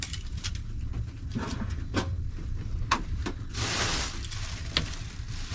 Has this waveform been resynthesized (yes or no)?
no